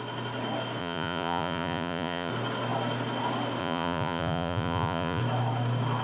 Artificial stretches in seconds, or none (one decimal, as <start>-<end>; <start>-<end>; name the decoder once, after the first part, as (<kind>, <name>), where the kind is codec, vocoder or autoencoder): 0.8-2.3 (vocoder, Vocos); 3.6-5.2